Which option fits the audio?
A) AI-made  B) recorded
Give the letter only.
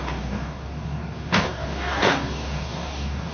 A